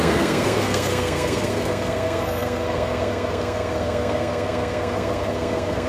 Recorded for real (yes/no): no